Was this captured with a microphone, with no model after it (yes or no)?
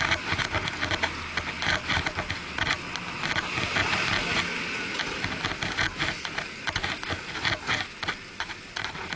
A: yes